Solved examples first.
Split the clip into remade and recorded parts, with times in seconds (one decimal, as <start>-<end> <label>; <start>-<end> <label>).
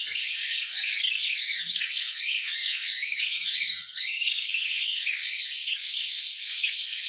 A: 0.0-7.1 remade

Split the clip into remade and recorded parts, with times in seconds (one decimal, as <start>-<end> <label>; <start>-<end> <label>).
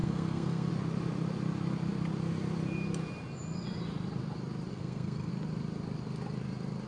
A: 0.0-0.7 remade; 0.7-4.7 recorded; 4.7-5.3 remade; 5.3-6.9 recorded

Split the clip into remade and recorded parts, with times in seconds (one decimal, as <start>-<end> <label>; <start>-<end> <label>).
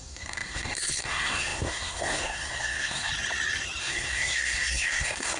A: 0.0-3.1 remade; 3.1-3.8 recorded; 3.8-5.4 remade